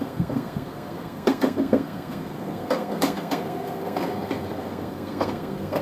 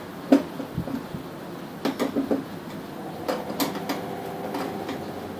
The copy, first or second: first